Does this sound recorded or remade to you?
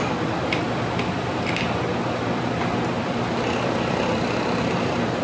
remade